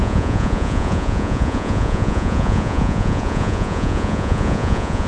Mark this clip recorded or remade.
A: remade